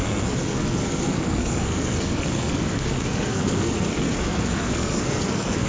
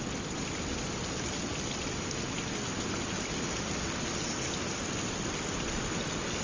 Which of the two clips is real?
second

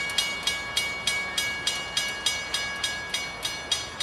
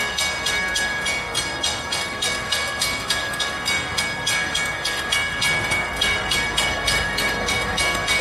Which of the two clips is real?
first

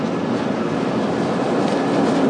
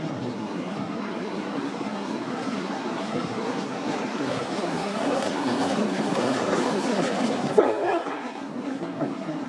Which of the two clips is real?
first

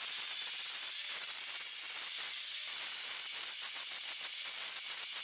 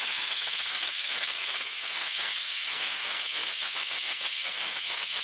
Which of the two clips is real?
first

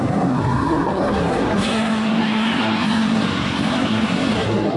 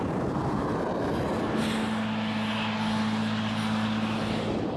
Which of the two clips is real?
second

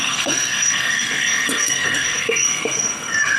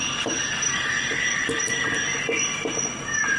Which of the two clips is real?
second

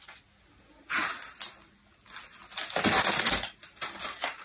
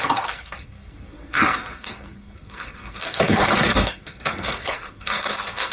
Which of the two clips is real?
first